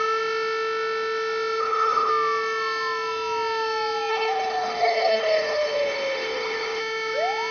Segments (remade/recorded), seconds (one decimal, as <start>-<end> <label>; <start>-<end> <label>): 0.0-1.6 recorded; 1.6-2.1 remade; 2.1-4.1 recorded; 4.1-6.8 remade; 6.8-7.5 recorded